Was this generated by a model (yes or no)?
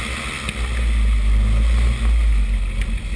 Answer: no